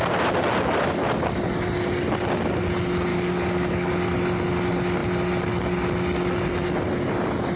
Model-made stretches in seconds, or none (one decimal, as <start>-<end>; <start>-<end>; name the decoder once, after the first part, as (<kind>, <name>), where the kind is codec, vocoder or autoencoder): 3.1-3.9 (codec, DAC)